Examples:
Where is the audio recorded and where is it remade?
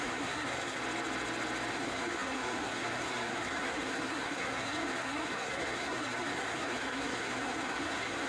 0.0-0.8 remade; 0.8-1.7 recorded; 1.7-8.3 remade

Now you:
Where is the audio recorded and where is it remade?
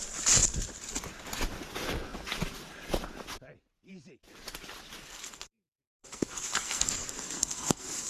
0.0-5.0 recorded; 5.0-8.1 remade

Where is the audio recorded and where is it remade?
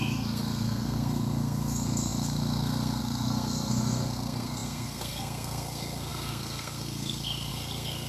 0.0-8.1 remade